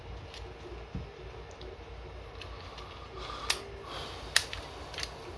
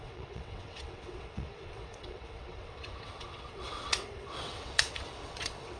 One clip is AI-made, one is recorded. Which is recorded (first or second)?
first